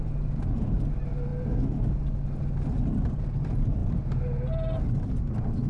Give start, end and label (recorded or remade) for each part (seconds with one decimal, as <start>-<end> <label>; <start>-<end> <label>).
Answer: 0.0-5.7 recorded